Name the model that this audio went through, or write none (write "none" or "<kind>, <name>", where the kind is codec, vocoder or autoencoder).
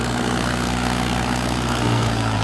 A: codec, SNAC